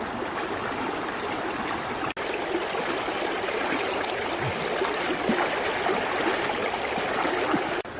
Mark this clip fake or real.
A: real